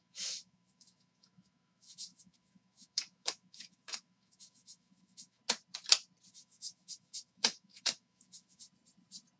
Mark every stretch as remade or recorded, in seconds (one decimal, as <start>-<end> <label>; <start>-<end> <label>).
0.0-5.4 remade; 5.4-6.3 recorded; 6.3-8.6 remade; 8.6-9.4 recorded